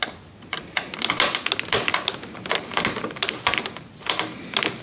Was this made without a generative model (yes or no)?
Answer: yes